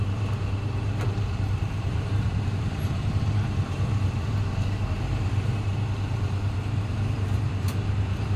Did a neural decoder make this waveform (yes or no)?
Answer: yes